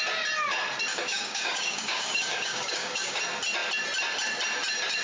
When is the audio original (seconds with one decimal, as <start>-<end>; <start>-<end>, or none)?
0.0-0.9; 3.2-5.0